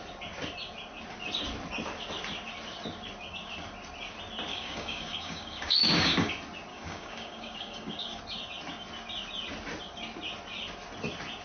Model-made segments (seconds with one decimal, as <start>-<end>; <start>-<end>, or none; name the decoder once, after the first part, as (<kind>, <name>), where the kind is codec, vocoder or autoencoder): 4.5-6.3 (codec, DAC); 6.7-8.2